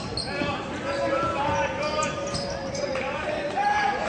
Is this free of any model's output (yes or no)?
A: yes